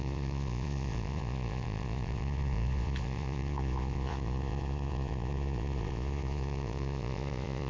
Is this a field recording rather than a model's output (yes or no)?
no